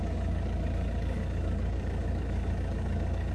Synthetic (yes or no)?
yes